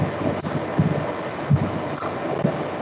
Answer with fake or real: real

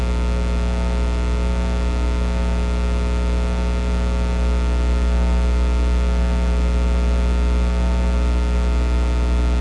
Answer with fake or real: real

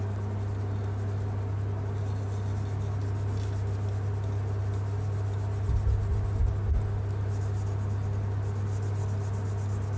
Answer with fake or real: real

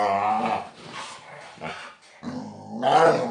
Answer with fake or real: real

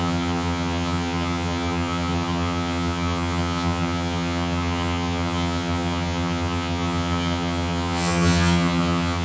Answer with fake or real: fake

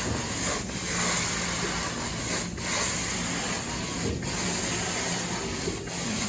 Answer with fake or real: real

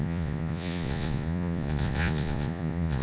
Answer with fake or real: fake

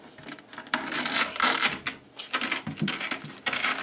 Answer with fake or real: real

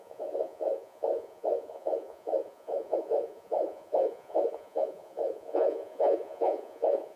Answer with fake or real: fake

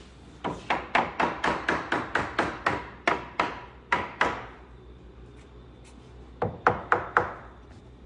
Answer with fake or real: real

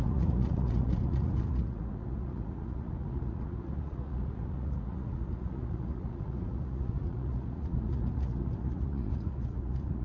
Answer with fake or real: fake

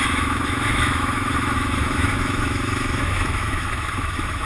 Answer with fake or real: fake